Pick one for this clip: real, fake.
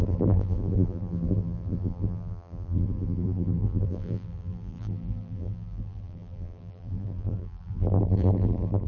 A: fake